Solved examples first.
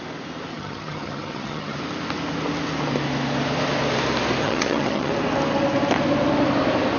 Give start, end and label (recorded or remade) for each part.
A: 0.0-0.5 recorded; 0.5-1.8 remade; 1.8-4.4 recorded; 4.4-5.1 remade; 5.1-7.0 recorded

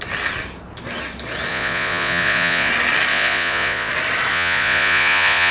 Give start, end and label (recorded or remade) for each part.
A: 0.0-1.5 recorded; 1.5-2.7 remade; 2.7-3.1 recorded; 3.1-3.9 remade; 3.9-4.3 recorded; 4.3-5.5 remade

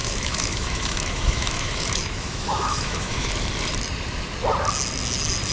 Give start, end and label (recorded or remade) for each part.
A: 0.0-3.3 remade; 3.3-5.5 recorded

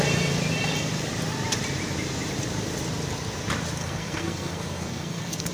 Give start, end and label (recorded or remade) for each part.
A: 0.0-3.8 recorded; 3.8-5.5 remade

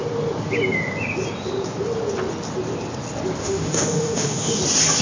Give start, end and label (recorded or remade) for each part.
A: 0.0-3.4 recorded; 3.4-4.6 remade; 4.6-5.0 recorded

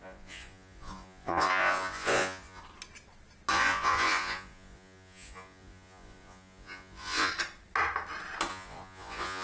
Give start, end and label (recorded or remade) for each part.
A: 0.0-2.6 remade; 2.6-3.5 recorded; 3.5-7.3 remade; 7.3-8.5 recorded; 8.5-9.4 remade

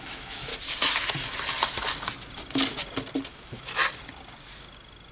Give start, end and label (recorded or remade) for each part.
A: 0.0-0.5 remade; 0.5-3.3 recorded; 3.3-3.8 remade; 3.8-5.1 recorded

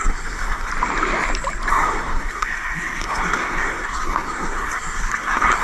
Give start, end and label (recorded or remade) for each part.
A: 0.0-0.7 remade; 0.7-1.7 recorded; 1.7-5.6 remade